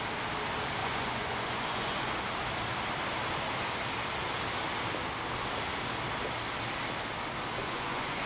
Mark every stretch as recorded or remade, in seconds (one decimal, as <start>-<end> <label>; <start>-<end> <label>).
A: 0.0-0.8 recorded; 0.8-2.1 remade; 2.1-7.6 recorded; 7.6-8.3 remade